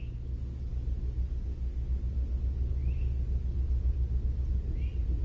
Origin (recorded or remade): recorded